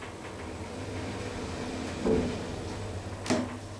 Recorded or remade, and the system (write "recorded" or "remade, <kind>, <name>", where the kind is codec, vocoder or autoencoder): recorded